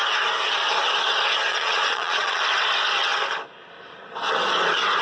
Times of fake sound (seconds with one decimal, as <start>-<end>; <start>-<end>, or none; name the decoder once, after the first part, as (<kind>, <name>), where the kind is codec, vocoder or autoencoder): 1.5-2.4 (vocoder, Vocos)